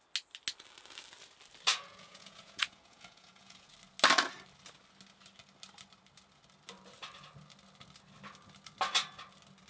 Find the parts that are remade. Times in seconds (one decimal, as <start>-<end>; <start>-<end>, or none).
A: 1.7-3.7